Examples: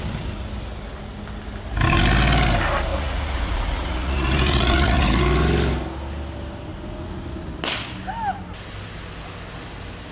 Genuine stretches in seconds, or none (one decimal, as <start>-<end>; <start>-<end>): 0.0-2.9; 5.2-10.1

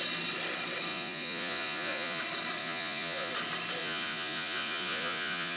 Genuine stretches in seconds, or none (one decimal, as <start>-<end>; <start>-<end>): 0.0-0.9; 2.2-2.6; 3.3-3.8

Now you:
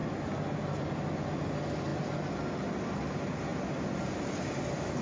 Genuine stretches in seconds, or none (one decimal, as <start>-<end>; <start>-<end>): 0.0-5.0

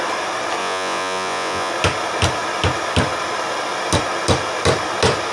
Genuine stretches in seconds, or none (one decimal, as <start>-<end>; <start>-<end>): 0.0-0.6; 1.7-5.3

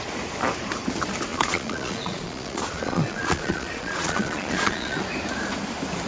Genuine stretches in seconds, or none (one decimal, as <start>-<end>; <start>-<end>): 0.0-1.3; 5.0-6.1

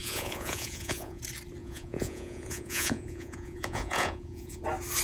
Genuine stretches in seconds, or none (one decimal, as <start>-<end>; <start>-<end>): 1.2-1.6; 4.6-5.0

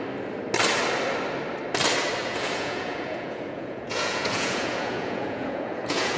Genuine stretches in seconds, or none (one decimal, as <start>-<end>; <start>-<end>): 0.0-2.2

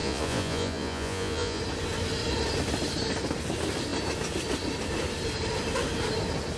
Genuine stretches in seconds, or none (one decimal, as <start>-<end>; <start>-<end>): 1.6-6.6